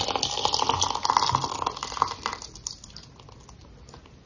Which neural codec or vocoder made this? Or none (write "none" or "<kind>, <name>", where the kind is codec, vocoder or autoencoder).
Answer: none